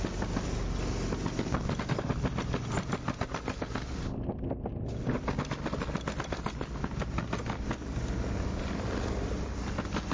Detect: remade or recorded recorded